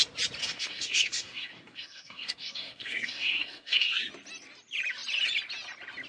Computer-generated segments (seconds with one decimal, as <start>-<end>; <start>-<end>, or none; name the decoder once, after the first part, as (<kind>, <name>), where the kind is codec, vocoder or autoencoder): 0.4-4.1 (codec, SNAC)